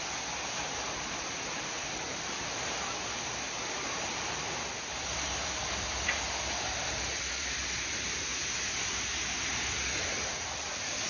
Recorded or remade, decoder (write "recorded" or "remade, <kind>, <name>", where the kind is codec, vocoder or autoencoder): recorded